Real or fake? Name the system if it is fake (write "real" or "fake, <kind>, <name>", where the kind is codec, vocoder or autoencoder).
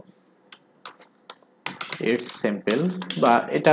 real